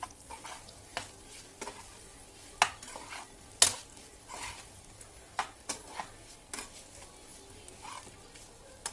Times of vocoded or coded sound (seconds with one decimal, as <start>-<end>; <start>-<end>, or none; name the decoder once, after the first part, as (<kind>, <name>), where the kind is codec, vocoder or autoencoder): none